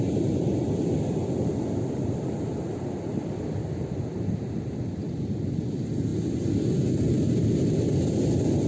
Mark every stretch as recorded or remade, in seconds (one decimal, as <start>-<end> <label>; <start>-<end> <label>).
0.0-8.7 recorded